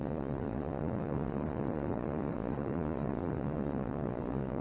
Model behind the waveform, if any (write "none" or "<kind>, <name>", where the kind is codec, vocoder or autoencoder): vocoder, Vocos